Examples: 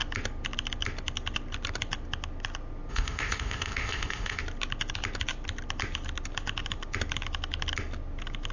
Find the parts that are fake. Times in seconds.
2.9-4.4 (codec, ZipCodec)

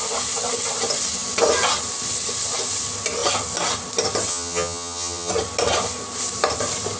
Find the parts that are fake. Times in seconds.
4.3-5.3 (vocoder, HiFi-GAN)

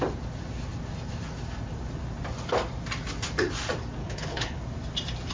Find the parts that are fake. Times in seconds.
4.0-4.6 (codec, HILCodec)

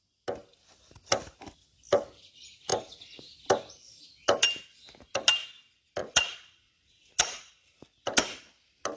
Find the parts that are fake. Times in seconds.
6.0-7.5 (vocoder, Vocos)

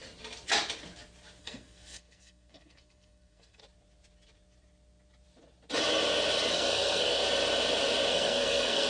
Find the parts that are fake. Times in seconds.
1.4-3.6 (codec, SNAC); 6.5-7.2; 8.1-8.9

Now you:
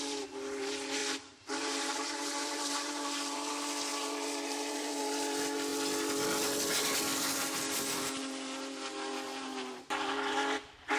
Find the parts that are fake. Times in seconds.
1.0-3.5 (vocoder, BigVGAN v2); 3.9-5.0